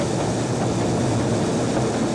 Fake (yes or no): no